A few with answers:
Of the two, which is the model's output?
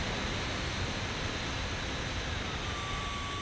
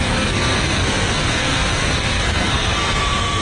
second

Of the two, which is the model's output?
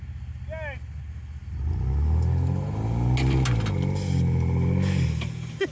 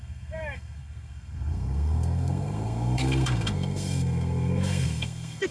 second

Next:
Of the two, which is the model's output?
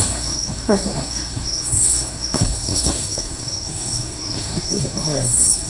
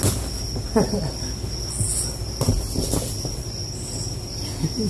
first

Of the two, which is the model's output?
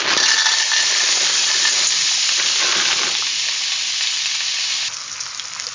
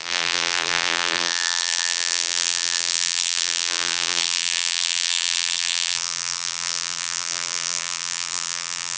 second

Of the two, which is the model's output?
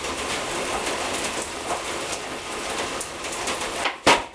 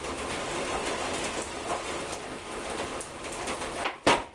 first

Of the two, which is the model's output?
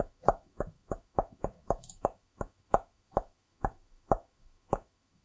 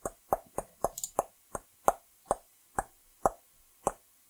first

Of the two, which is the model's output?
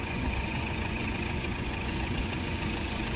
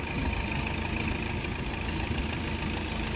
first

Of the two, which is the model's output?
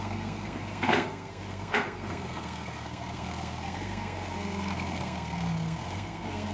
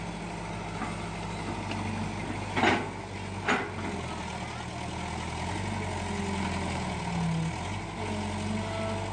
first